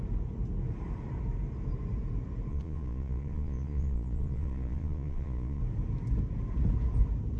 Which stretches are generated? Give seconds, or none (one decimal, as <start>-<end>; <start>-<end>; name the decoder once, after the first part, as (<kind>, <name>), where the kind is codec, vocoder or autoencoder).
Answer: 2.5-5.6 (vocoder, Vocos)

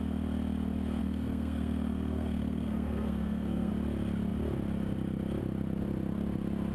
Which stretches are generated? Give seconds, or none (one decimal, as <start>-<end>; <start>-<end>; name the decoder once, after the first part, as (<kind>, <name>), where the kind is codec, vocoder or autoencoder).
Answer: 1.0-3.7 (codec, SNAC)

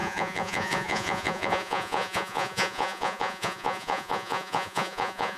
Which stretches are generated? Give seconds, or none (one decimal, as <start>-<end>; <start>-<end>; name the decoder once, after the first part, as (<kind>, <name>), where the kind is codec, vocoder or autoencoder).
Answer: 0.0-5.4 (vocoder, Vocos)

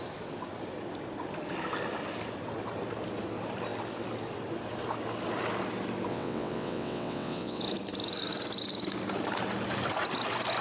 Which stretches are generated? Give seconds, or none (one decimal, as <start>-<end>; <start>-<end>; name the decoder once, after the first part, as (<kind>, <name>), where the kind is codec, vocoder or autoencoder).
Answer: 6.1-7.6 (vocoder, WaveNeXt)

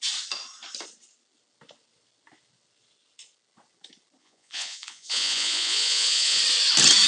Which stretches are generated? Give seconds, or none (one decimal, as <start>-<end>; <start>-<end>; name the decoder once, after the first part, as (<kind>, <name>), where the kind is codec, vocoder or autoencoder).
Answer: 4.2-6.4 (vocoder, Vocos)

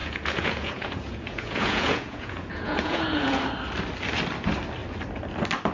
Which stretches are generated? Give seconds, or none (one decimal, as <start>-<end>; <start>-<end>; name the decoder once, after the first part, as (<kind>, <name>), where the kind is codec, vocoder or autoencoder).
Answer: 0.0-3.4 (vocoder, Vocos)

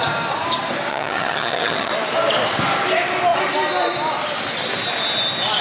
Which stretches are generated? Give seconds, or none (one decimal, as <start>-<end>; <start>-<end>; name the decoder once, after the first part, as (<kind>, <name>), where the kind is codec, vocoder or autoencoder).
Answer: 0.9-1.9 (vocoder, HiFi-GAN)

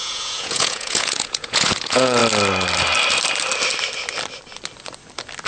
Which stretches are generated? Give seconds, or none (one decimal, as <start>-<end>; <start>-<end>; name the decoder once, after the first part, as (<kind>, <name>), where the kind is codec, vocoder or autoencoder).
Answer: 0.0-2.2 (vocoder, Vocos)